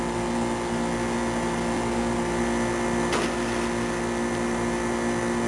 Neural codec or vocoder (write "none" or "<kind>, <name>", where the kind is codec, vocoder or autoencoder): none